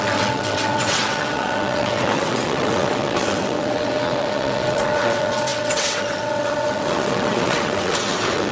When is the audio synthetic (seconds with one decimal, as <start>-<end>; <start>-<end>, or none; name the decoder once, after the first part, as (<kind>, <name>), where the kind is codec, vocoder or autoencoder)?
0.0-8.5 (vocoder, WaveNeXt)